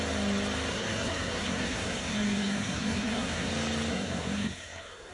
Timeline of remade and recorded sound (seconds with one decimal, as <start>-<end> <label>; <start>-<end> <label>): 0.0-0.7 recorded; 0.7-3.5 remade; 3.5-3.9 recorded; 3.9-5.1 remade